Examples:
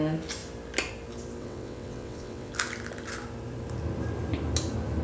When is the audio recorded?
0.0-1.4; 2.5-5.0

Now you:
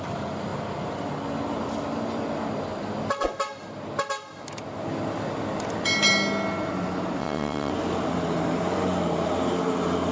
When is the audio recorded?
0.0-7.2; 7.7-10.1

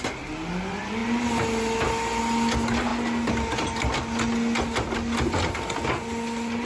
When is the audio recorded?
0.0-6.7